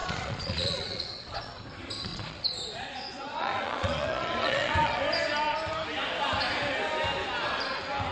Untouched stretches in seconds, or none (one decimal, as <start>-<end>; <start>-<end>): 1.5-2.1; 5.0-8.1

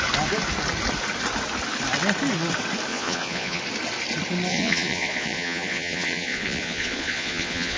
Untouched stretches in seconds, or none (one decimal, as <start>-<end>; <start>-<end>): 0.0-2.9; 3.6-4.5

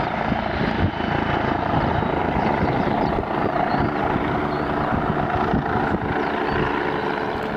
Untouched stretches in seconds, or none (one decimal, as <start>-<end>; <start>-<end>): 0.0-2.2; 4.4-7.6

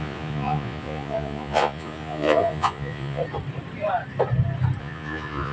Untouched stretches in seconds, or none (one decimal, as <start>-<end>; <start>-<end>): 3.2-4.8

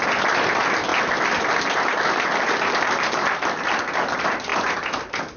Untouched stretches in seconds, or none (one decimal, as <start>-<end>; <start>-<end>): 0.0-5.4

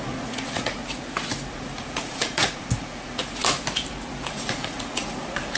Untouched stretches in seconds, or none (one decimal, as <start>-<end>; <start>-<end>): 0.8-1.5; 3.4-4.3

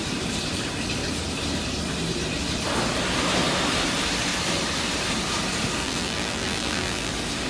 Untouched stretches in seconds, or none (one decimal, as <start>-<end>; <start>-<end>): 0.0-5.8; 7.1-7.5

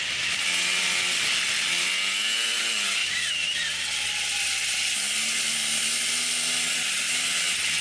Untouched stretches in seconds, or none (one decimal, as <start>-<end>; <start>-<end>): 0.0-7.8